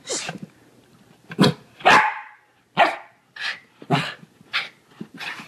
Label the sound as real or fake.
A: real